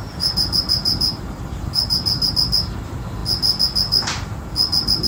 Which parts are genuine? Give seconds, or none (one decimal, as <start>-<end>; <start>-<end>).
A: 2.3-5.1